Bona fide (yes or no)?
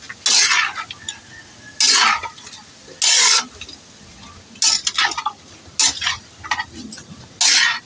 yes